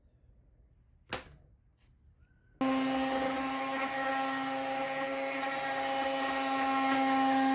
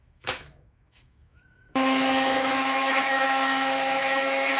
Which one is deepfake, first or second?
second